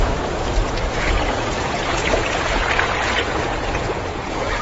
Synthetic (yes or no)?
yes